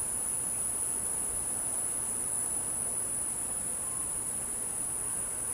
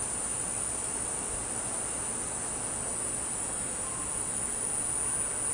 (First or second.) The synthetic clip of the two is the first